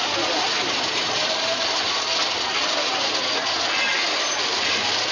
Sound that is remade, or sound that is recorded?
recorded